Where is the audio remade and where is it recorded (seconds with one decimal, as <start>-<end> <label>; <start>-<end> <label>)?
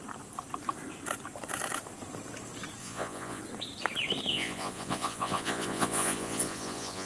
0.0-2.8 recorded; 2.8-3.4 remade; 3.4-4.3 recorded; 4.3-7.1 remade